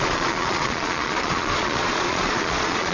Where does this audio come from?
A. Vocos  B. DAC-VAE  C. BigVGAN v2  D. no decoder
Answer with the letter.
A